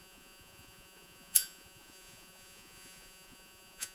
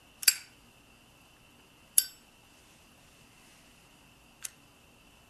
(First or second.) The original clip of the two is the second